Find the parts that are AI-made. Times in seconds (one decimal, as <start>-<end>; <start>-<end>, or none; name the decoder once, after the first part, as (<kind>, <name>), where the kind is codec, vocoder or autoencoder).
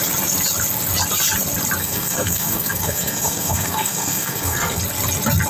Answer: 1.8-4.8 (codec, SNAC)